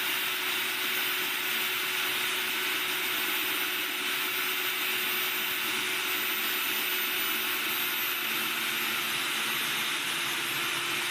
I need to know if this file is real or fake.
real